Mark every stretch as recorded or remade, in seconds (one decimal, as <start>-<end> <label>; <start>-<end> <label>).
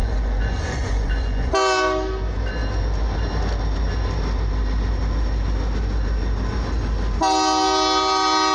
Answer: 0.0-1.5 remade; 1.5-8.5 recorded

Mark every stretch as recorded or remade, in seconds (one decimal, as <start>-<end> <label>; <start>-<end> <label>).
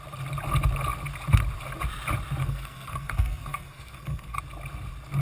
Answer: 0.0-2.4 recorded; 2.4-4.4 remade; 4.4-5.2 recorded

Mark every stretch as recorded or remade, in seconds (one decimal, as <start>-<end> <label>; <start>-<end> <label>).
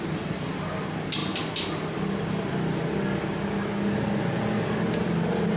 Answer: 0.0-5.6 recorded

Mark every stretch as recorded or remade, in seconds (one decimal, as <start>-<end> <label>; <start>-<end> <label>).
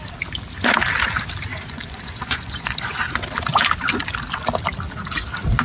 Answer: 0.0-1.5 recorded; 1.5-3.0 remade; 3.0-5.6 recorded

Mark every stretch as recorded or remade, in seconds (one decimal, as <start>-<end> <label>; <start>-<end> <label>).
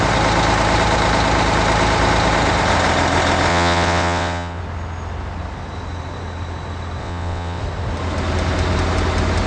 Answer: 0.0-3.5 recorded; 3.5-4.6 remade; 4.6-7.0 recorded; 7.0-7.6 remade; 7.6-9.5 recorded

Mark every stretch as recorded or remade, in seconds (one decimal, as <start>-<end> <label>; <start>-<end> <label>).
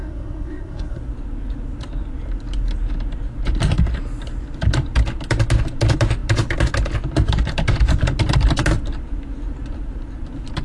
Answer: 0.0-1.0 remade; 1.0-10.6 recorded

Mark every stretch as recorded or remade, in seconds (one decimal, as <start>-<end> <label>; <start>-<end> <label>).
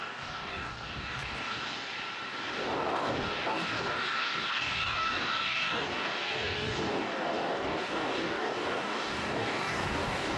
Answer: 0.0-1.9 remade; 1.9-2.5 recorded; 2.5-10.4 remade